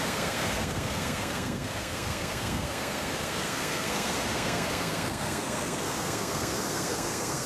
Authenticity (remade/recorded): remade